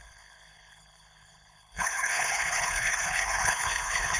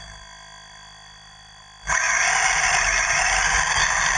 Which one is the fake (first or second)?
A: first